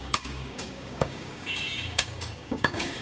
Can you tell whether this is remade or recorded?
remade